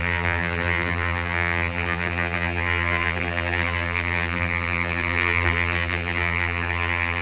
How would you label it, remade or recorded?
remade